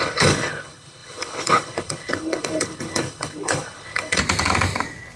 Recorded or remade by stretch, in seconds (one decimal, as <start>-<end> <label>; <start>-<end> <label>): 0.0-4.2 remade; 4.2-5.2 recorded